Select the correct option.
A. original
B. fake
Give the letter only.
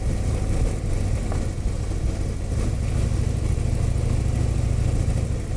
A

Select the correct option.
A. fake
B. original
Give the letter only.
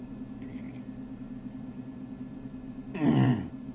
A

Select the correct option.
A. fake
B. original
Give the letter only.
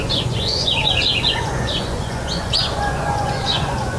A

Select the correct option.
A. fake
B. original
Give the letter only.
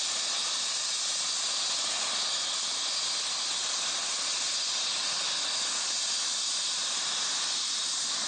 B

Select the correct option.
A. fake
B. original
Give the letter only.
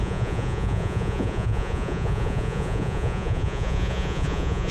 A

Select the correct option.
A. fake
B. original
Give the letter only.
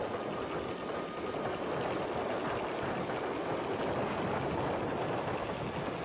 B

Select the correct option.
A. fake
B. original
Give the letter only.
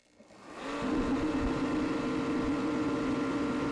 B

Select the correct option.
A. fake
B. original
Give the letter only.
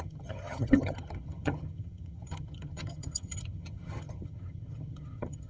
A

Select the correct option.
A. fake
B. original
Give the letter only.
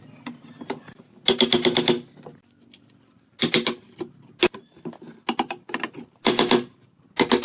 B